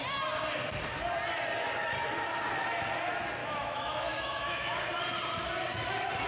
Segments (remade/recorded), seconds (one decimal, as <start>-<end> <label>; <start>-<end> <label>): 0.0-3.4 recorded; 3.4-4.8 remade; 4.8-6.3 recorded